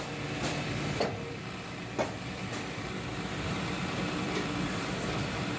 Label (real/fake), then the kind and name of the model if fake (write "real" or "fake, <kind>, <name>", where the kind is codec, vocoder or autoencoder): fake, vocoder, BigVGAN v2